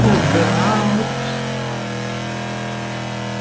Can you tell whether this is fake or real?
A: real